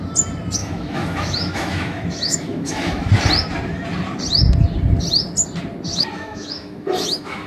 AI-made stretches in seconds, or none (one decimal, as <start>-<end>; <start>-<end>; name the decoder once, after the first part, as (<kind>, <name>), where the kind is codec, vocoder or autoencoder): 0.6-3.1 (autoencoder, DAC-VAE); 5.9-7.5

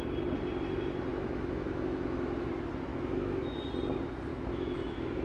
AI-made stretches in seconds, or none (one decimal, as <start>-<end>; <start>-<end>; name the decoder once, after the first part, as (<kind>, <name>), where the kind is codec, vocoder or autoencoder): 1.1-2.5 (autoencoder, DAC-VAE); 2.9-3.7; 4.3-5.2